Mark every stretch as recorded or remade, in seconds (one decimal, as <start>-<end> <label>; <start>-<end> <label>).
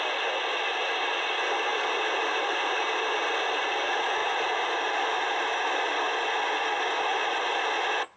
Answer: 0.0-1.7 recorded; 1.7-3.2 remade; 3.2-4.2 recorded; 4.2-5.8 remade; 5.8-7.1 recorded; 7.1-7.7 remade; 7.7-8.2 recorded